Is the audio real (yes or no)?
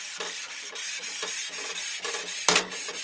yes